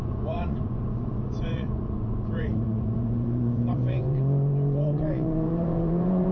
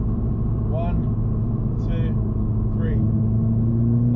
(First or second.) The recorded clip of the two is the second